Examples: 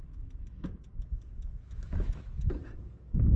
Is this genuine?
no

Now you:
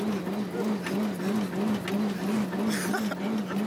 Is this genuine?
yes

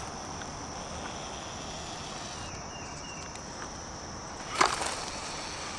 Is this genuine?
yes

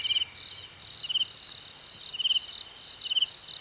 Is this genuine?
yes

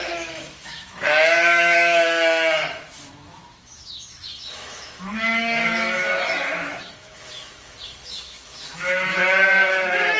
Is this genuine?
no